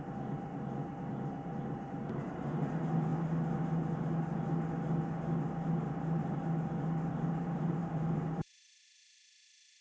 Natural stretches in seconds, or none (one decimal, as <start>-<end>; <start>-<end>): 3.1-7.1